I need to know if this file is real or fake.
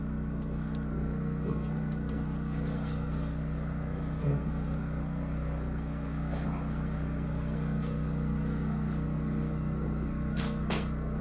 fake